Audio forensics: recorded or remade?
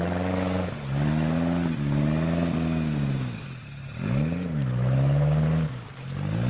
recorded